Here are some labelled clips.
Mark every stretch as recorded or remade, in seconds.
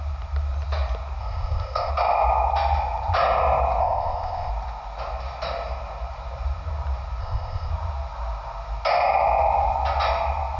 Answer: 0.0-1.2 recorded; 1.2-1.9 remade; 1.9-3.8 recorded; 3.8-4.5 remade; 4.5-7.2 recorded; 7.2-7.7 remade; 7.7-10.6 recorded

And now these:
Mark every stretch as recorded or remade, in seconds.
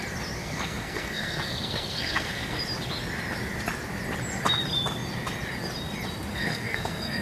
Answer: 0.0-0.4 recorded; 0.4-2.6 remade; 2.6-6.3 recorded; 6.3-7.2 remade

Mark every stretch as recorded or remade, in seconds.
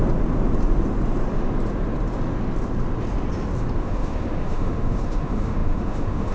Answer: 0.0-3.8 recorded; 3.8-6.3 remade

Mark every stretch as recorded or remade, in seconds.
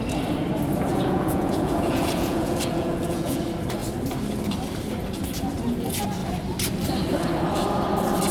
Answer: 0.0-0.9 recorded; 0.9-3.4 remade; 3.4-8.3 recorded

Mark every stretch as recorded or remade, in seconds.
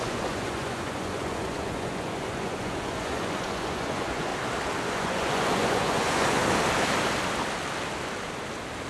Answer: 0.0-4.3 remade; 4.3-4.9 recorded; 4.9-6.4 remade; 6.4-8.9 recorded